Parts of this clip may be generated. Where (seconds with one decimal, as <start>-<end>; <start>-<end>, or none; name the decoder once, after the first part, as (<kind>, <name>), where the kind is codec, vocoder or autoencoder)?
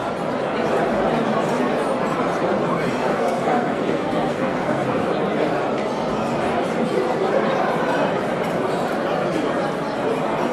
3.1-5.1 (codec, SNAC)